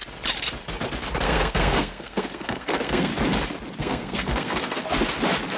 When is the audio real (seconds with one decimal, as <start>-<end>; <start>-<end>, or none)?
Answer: 0.0-1.2; 3.1-3.8; 4.8-5.6